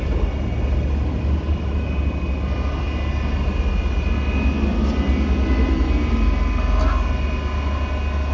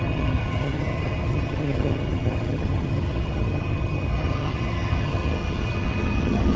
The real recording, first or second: first